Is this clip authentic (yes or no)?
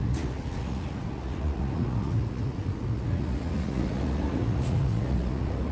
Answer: no